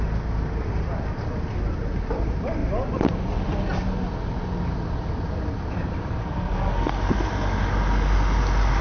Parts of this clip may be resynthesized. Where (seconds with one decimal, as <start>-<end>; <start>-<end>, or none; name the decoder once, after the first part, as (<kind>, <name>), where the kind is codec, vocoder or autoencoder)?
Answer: 6.2-7.3 (codec, SNAC)

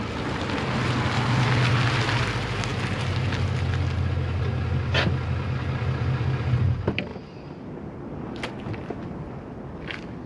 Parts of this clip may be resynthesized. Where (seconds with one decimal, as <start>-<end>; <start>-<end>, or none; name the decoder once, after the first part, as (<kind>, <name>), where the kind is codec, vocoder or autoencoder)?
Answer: none

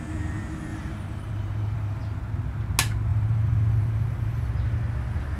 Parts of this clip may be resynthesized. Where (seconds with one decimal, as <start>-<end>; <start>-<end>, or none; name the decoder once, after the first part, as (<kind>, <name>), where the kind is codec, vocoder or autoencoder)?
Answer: 0.7-2.0 (vocoder, BigVGAN v2); 3.1-4.5

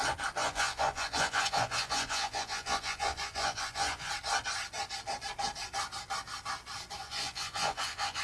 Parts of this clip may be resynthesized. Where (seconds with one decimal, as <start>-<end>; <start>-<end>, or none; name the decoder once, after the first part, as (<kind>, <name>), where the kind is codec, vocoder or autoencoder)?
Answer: 0.4-4.1 (vocoder, Vocos); 7.0-8.2

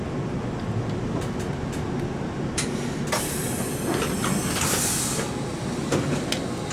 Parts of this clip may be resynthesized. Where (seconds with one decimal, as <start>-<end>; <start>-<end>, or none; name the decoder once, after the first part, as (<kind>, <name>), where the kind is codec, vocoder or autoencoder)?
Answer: 4.2-4.8 (vocoder, BigVGAN v2)

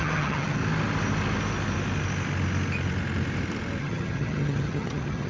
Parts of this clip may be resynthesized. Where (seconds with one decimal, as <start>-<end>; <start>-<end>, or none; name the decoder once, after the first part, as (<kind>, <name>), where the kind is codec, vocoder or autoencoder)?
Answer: 0.0-0.6 (vocoder, HiFi-GAN); 3.8-5.3

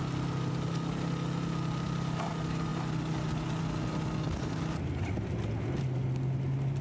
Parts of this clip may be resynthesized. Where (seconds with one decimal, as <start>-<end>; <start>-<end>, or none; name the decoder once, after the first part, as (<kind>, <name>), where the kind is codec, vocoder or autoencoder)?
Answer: none